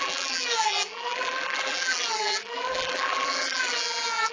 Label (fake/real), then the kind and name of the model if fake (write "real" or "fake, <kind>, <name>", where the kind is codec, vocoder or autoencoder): fake, vocoder, BigVGAN v2